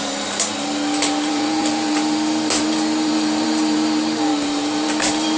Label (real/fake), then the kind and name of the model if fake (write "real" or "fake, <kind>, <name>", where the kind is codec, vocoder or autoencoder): fake, vocoder, BigVGAN v2